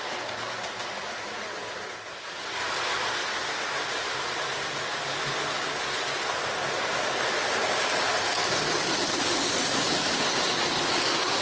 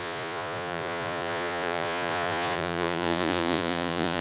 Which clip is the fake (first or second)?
second